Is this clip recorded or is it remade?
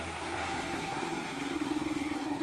remade